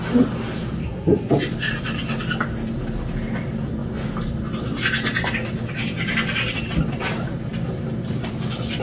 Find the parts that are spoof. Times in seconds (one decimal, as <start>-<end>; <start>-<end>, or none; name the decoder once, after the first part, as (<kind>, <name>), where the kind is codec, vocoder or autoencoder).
0.8-1.3 (codec, SNAC)